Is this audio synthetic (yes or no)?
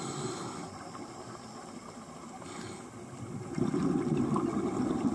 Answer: no